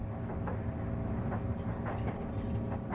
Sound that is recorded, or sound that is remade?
recorded